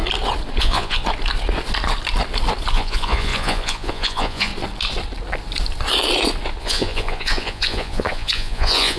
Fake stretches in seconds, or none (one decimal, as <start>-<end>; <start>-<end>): 0.6-1.0; 2.7-4.5; 6.6-9.0